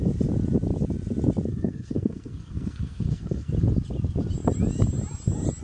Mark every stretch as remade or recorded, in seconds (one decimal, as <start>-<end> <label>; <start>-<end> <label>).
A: 0.0-1.5 recorded; 1.5-3.5 remade; 3.5-5.6 recorded